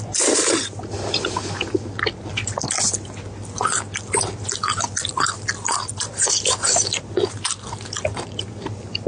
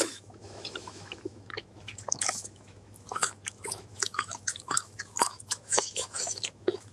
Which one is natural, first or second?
first